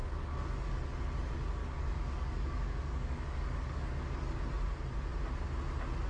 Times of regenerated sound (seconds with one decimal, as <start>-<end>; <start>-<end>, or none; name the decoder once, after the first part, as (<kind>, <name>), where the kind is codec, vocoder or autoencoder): 0.0-0.7 (codec, DAC); 1.6-4.4